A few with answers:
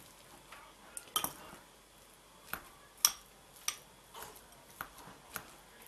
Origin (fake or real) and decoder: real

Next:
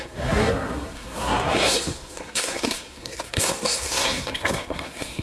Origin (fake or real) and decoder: fake, codec, SNAC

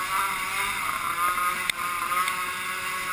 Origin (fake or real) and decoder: real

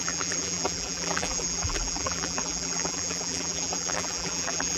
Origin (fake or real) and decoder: fake, vocoder, BigVGAN v2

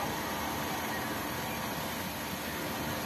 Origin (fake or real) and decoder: fake, vocoder, BigVGAN v2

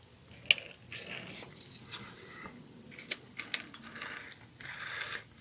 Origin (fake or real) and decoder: real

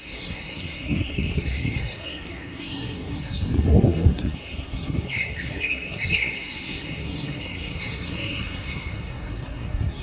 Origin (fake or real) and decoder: fake, codec, SNAC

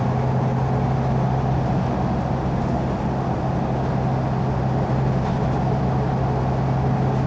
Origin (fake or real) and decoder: real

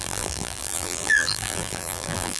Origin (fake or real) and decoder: fake, vocoder, BigVGAN v2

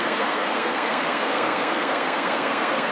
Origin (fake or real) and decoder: fake, codec, SNAC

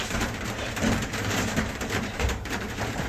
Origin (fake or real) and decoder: fake, vocoder, BigVGAN v2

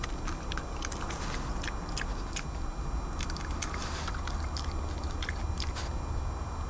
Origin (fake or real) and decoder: real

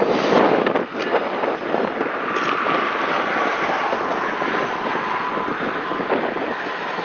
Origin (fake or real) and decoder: real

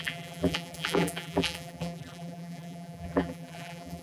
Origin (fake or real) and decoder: fake, vocoder, BigVGAN v2